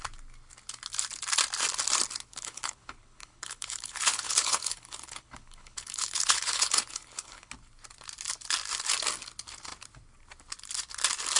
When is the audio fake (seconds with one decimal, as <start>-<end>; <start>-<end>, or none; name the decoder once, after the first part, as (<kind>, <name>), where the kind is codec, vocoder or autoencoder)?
2.3-7.5 (codec, HILCodec)